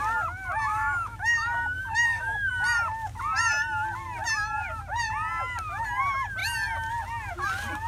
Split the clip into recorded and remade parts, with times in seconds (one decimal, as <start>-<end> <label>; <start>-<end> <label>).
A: 0.0-0.7 recorded; 0.7-2.5 remade; 2.5-7.9 recorded